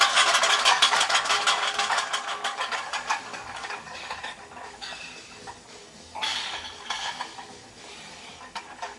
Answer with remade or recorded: remade